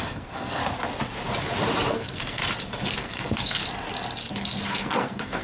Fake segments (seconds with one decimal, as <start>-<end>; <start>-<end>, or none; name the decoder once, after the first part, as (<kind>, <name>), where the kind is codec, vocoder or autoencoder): 0.0-0.6 (codec, SNAC); 1.9-2.4; 2.9-3.6; 4.7-5.4